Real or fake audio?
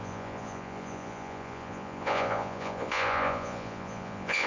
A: fake